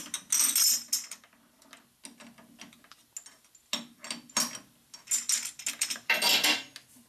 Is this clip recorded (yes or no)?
yes